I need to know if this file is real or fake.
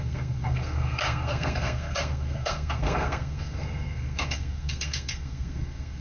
fake